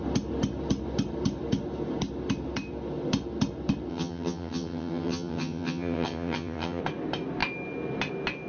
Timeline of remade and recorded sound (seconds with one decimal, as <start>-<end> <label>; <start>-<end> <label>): 0.0-3.9 recorded; 3.9-6.8 remade; 6.8-8.5 recorded